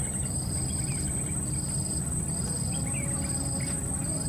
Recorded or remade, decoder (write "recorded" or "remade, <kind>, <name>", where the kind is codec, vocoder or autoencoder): recorded